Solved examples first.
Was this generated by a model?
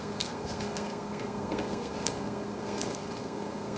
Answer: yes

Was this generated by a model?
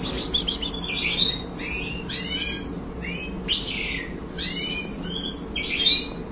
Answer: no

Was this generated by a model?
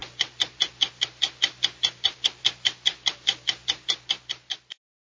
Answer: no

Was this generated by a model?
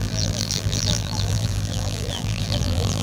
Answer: yes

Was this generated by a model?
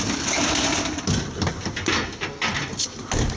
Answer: no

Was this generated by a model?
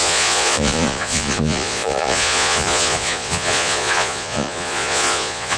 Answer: yes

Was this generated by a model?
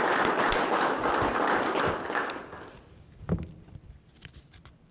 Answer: no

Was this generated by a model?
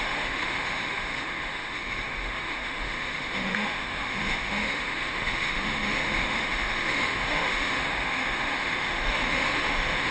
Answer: yes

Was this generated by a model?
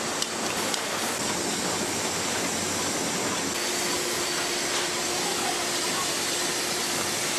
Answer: no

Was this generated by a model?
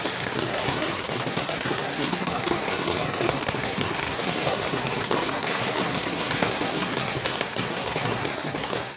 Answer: yes